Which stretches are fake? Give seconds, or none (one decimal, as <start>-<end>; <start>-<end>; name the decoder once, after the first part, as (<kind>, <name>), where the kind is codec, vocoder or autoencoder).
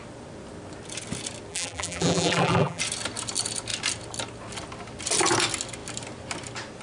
1.5-2.8 (vocoder, BigVGAN v2)